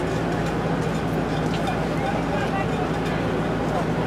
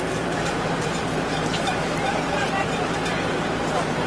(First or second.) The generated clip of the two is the second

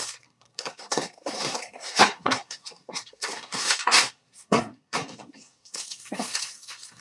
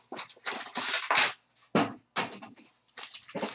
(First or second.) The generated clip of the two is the first